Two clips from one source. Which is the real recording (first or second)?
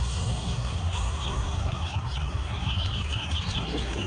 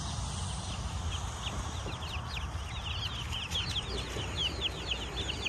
second